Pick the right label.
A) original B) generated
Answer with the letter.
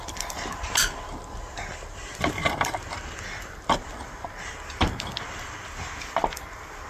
A